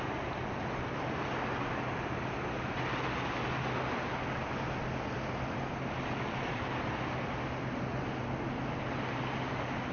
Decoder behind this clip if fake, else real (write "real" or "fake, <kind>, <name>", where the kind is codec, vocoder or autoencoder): real